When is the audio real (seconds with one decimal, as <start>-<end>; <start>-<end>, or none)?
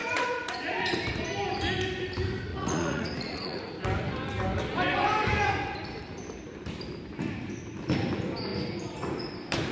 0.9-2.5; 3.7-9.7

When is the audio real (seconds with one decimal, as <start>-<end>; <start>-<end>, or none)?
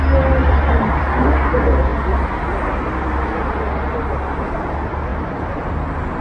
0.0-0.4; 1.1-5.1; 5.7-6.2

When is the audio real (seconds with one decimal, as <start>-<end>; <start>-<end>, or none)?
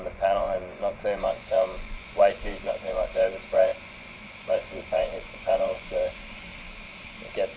6.5-7.6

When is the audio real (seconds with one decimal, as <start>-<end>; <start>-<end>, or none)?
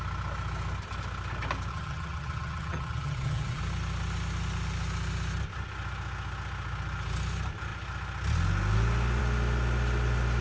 0.0-1.7; 3.6-10.4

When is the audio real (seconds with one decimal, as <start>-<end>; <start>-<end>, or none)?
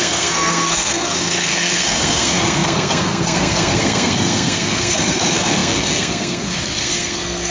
none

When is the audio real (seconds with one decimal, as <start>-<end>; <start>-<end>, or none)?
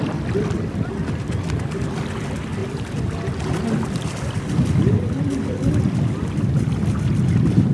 0.0-7.7